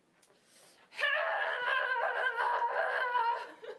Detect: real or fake real